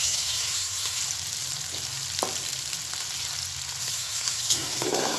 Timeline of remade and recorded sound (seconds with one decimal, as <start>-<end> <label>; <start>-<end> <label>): 0.0-1.0 remade; 1.0-3.8 recorded; 3.8-5.2 remade